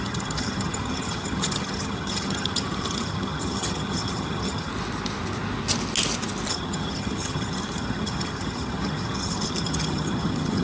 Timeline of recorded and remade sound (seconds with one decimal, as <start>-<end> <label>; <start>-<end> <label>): 0.0-4.7 remade; 4.7-6.5 recorded; 6.5-10.6 remade